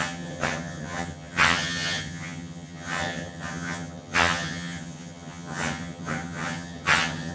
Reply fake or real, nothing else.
fake